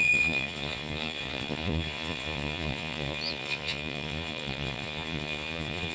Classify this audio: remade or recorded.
remade